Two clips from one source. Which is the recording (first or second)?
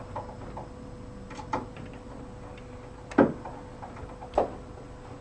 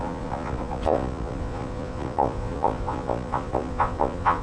first